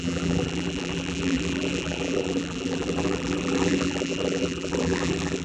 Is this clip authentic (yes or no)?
no